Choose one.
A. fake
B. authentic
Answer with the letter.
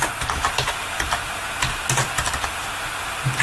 B